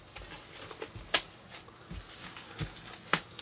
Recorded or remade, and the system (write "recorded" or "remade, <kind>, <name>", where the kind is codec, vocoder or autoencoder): recorded